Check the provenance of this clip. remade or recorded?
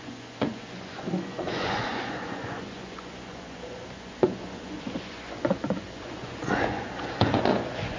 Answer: remade